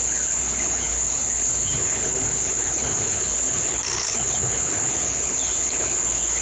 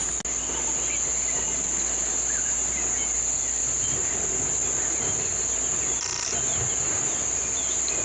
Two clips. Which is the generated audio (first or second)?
first